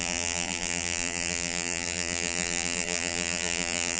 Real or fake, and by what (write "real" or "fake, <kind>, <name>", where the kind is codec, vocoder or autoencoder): fake, vocoder, BigVGAN v2